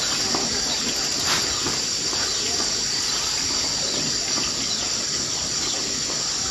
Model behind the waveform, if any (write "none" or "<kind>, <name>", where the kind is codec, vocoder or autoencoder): none